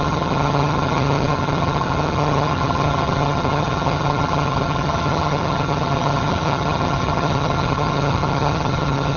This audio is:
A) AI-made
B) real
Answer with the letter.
A